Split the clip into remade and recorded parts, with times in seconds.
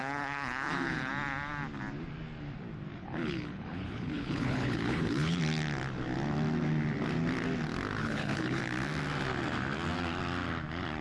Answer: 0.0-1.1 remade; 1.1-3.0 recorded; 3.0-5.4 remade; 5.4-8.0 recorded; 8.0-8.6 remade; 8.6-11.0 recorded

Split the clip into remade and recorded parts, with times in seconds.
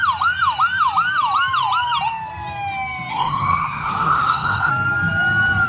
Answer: 0.0-3.1 recorded; 3.1-4.7 remade; 4.7-5.7 recorded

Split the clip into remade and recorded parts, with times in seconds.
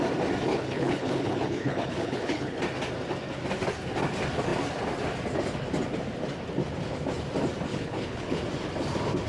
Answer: 0.0-0.5 recorded; 0.5-2.6 remade; 2.6-7.7 recorded; 7.7-8.4 remade; 8.4-9.3 recorded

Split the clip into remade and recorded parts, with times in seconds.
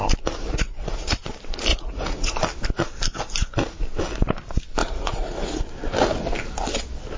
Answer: 0.0-0.4 recorded; 0.4-1.2 remade; 1.2-1.7 recorded; 1.7-2.3 remade; 2.3-4.8 recorded; 4.8-5.6 remade; 5.6-7.2 recorded